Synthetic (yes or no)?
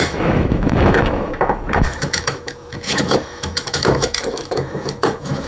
yes